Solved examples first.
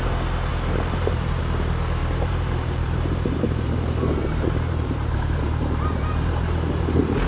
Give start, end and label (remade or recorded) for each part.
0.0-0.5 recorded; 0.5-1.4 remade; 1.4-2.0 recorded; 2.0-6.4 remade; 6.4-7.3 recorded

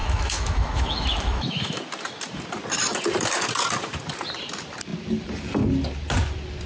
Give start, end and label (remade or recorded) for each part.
0.0-1.8 remade; 1.8-6.7 recorded

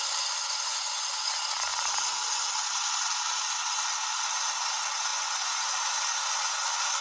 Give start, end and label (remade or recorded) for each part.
0.0-0.4 recorded; 0.4-1.0 remade; 1.0-5.1 recorded; 5.1-5.9 remade; 5.9-7.0 recorded

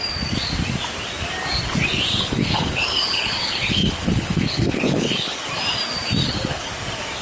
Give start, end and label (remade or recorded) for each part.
0.0-2.1 recorded; 2.1-5.4 remade; 5.4-6.2 recorded; 6.2-6.7 remade; 6.7-7.2 recorded

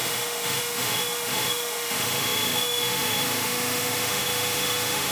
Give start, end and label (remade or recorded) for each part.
0.0-5.1 remade

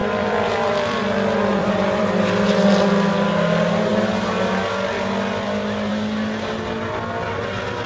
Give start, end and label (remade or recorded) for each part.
0.0-1.0 remade; 1.0-1.5 recorded; 1.5-2.0 remade; 2.0-7.9 recorded

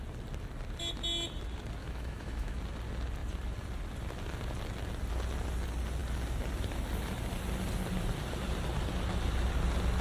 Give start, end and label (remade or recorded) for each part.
0.0-1.8 recorded; 1.8-2.6 remade; 2.6-10.0 recorded

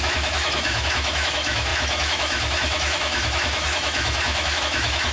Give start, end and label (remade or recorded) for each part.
0.0-5.1 remade